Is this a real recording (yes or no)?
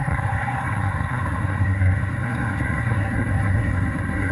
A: no